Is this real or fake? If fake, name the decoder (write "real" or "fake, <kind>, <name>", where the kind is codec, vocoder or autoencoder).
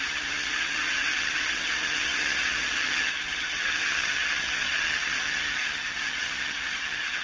fake, vocoder, HiFi-GAN